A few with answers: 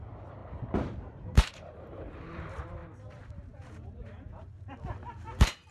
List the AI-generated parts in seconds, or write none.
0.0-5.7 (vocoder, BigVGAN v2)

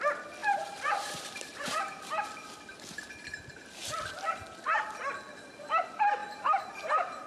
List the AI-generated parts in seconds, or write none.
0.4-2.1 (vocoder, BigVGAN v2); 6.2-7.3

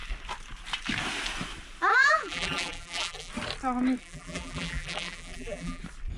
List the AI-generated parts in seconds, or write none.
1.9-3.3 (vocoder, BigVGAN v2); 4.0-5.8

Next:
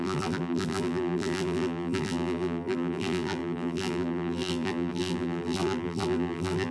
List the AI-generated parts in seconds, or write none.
0.0-6.7 (vocoder, BigVGAN v2)

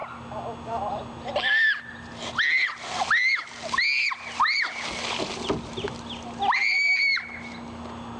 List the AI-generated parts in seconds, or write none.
none

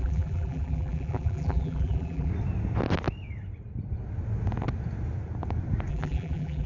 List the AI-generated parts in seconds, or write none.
0.0-2.3 (vocoder, BigVGAN v2); 5.9-6.7

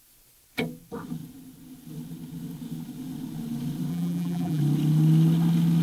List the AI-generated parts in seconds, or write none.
3.9-4.6 (vocoder, BigVGAN v2)